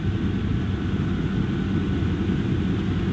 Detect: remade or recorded recorded